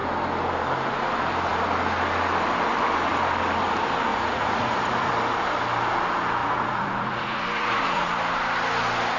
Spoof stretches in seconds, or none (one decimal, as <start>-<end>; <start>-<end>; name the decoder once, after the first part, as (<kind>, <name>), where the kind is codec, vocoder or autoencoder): 4.1-5.1 (vocoder, Vocos); 6.4-8.1